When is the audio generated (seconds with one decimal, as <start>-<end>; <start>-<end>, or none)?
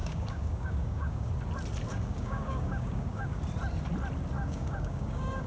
0.0-1.3; 1.9-3.4; 4.4-5.5